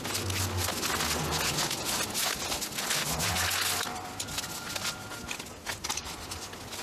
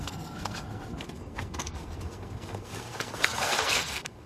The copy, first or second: second